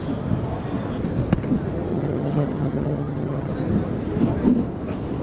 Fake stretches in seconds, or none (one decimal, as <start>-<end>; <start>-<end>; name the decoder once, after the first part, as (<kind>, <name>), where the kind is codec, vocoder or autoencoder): 1.9-3.5 (vocoder, HiFi-GAN)